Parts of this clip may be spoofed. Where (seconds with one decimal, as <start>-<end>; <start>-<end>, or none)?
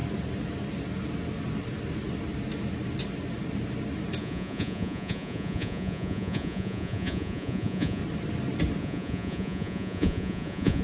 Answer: 4.2-8.0; 8.8-10.8